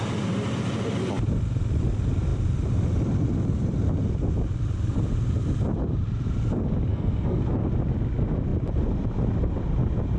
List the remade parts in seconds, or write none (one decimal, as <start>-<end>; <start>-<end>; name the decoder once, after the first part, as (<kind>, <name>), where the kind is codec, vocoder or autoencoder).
6.9-7.4 (codec, SNAC)